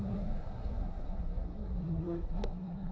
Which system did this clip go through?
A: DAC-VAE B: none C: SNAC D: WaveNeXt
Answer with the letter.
C